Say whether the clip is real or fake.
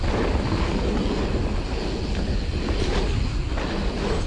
real